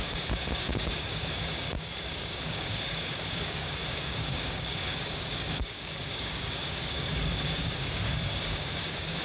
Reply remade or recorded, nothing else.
remade